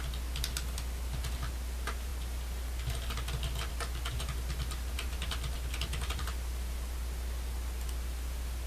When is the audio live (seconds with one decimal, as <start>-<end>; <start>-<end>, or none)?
0.0-8.7